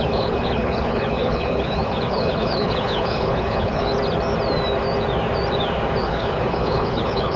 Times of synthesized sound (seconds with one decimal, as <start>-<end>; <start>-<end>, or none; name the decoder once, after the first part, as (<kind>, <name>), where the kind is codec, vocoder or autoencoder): 0.0-3.9 (codec, HILCodec); 6.0-7.4